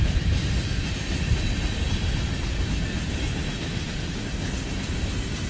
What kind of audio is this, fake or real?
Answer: real